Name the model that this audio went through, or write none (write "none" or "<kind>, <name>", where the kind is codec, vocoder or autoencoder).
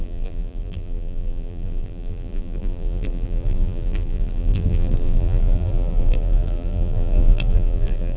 vocoder, BigVGAN v2